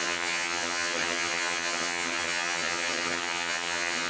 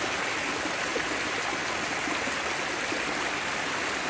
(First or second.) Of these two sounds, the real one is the second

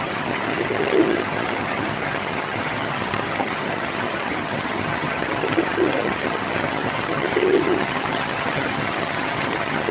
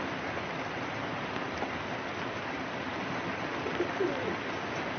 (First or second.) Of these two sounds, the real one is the second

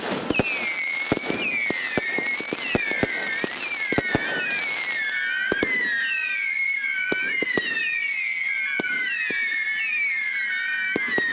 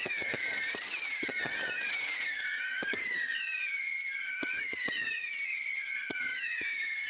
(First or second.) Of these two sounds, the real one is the first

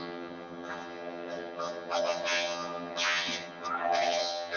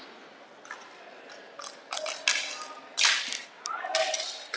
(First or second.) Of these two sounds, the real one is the second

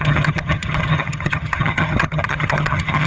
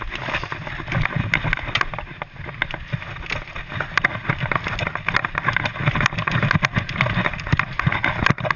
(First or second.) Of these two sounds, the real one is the second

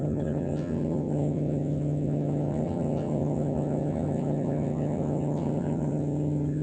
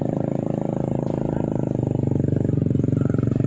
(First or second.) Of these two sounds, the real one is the second